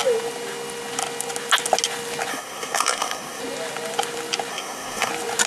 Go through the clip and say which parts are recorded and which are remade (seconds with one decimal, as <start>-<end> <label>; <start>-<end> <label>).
0.0-2.3 recorded; 2.3-3.4 remade; 3.4-4.5 recorded; 4.5-5.1 remade; 5.1-5.5 recorded